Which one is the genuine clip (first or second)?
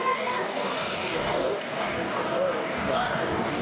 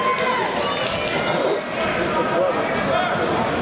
second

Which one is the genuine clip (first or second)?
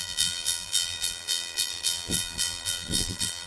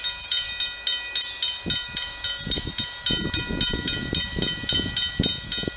second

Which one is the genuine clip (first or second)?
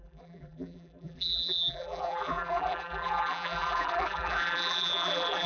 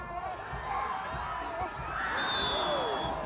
second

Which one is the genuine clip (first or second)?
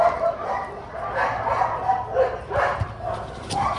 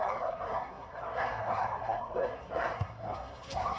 first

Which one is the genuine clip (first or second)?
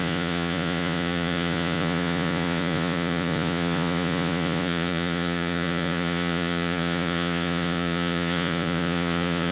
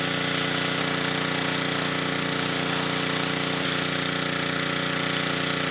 second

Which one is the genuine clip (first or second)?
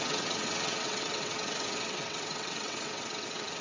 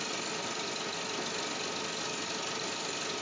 second